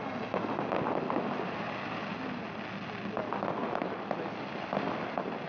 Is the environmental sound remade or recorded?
recorded